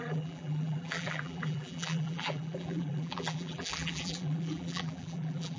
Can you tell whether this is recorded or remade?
remade